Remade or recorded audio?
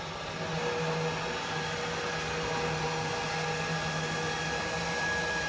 recorded